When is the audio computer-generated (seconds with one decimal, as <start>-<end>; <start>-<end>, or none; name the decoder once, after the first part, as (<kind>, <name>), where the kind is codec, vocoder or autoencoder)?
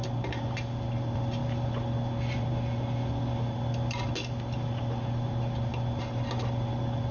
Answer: none